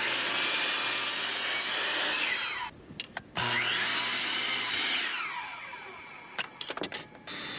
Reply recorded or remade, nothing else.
recorded